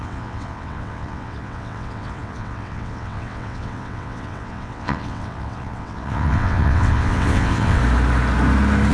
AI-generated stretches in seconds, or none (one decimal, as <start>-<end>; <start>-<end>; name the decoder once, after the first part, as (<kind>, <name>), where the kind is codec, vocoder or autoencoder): 0.0-7.8 (vocoder, WaveNeXt)